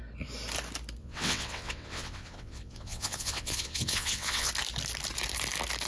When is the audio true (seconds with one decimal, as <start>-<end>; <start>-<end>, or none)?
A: 0.0-1.0; 4.5-5.9